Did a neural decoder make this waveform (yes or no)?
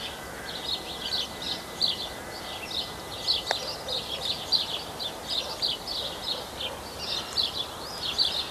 no